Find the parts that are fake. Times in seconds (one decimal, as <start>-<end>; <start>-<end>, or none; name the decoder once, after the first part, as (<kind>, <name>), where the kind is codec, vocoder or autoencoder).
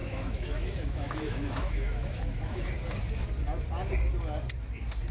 0.0-2.7 (autoencoder, DAC-VAE)